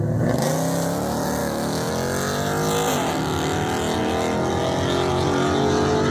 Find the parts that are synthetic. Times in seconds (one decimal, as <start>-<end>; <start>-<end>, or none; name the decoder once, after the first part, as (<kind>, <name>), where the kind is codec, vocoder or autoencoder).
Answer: 1.4-1.9 (autoencoder, DAC-VAE)

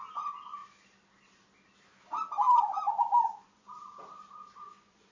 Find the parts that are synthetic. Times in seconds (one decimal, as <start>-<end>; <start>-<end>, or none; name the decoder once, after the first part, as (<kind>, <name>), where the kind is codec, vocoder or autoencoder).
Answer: 0.0-0.6 (vocoder, Vocos); 3.2-3.7; 4.6-5.1

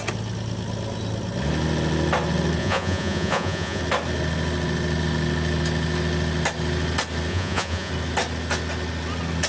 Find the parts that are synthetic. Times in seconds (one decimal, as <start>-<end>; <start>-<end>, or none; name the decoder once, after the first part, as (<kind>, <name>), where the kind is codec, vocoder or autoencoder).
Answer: 2.6-3.8 (vocoder, Vocos); 7.3-7.9

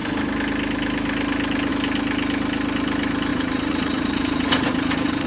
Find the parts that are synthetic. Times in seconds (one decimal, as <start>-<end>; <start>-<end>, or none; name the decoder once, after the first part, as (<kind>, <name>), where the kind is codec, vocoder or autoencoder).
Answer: 3.3-5.3 (vocoder, Vocos)

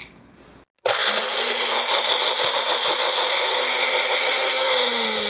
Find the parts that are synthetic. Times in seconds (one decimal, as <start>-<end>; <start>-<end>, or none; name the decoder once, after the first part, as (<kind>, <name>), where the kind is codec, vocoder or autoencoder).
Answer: none

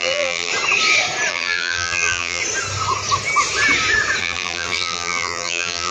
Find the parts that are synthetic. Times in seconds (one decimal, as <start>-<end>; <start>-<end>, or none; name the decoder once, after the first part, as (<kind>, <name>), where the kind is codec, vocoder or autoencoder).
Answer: 0.0-0.5 (vocoder, BigVGAN v2); 1.3-2.4; 4.2-5.9

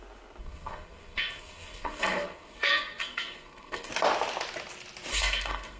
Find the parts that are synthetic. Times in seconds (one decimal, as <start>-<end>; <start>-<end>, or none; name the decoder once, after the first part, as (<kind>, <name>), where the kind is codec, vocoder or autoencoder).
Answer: 0.4-3.9 (codec, SNAC); 5.1-5.8